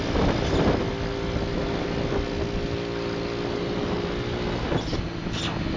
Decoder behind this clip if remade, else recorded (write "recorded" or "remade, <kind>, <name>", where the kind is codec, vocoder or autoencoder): recorded